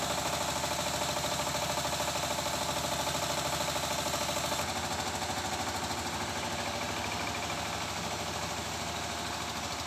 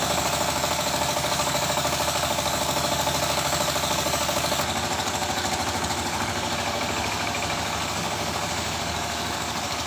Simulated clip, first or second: second